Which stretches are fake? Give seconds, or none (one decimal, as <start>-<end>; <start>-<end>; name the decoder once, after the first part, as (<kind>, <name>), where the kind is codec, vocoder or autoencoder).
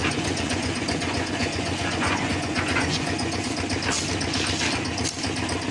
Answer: 0.0-3.4 (vocoder, Vocos)